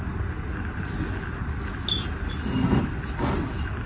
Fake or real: real